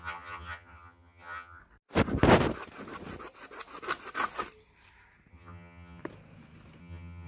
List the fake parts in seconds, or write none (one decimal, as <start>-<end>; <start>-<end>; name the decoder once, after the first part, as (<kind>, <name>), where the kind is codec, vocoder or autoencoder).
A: 0.0-1.6 (vocoder, HiFi-GAN); 5.3-6.0; 6.8-7.3